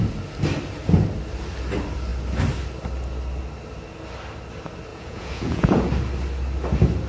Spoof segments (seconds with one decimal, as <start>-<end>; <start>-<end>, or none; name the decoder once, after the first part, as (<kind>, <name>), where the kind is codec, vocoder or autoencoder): 4.9-5.9 (vocoder, Vocos)

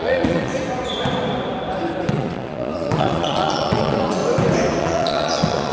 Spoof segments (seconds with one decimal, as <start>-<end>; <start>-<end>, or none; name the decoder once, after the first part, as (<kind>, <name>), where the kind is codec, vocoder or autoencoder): 0.0-0.5 (vocoder, Vocos); 2.1-4.2; 4.8-5.7

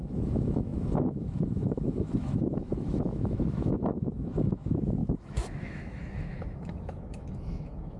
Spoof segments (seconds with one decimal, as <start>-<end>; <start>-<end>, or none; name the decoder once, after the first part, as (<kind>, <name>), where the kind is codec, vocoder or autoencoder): 0.0-8.0 (autoencoder, DAC-VAE)

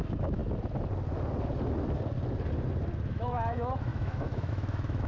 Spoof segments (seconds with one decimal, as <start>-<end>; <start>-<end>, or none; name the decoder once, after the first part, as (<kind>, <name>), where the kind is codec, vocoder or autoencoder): 0.0-0.4 (autoencoder, DAC-VAE); 3.1-5.1

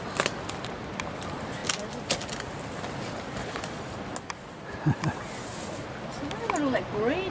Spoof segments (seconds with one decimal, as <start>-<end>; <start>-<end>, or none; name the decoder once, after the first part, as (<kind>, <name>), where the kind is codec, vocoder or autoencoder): 3.4-4.0 (vocoder, Vocos)

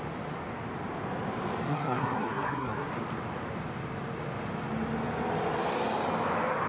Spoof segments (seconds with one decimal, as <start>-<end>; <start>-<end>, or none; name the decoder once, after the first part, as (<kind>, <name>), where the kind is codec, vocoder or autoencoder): 1.6-2.9 (codec, SNAC)

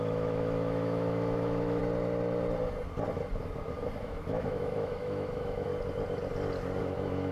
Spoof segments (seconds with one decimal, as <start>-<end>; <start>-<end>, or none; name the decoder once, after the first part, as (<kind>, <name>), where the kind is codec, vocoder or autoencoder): 0.0-1.8 (autoencoder, DAC-VAE); 4.0-5.7; 6.8-7.3

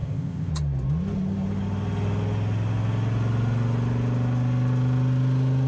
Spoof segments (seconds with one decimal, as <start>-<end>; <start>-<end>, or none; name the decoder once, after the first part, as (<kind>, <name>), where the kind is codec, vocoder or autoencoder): 0.0-0.5 (codec, ZipCodec)